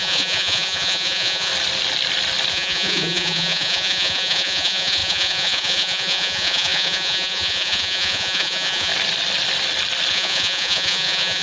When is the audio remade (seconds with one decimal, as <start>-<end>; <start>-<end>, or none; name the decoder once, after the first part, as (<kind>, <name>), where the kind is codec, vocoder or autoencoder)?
0.0-1.5 (vocoder, Vocos); 2.5-8.9; 10.1-11.4